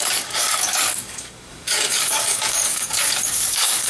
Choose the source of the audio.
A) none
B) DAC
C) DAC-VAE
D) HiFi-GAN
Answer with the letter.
B